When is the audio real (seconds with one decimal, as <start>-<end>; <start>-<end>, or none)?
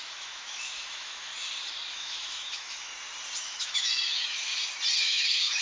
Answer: 1.3-1.9; 2.9-3.4; 4.5-5.0